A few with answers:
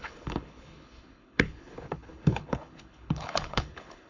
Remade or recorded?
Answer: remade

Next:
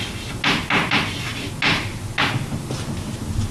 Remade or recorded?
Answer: recorded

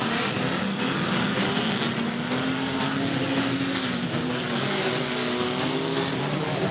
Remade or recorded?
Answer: recorded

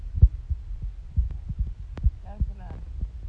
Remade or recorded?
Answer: recorded